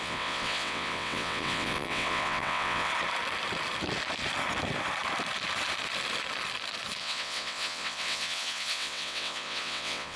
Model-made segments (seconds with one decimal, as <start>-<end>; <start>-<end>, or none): 0.0-2.9; 7.0-10.2